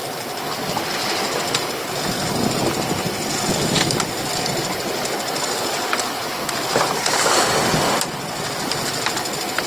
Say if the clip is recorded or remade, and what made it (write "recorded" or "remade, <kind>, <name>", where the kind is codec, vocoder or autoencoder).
recorded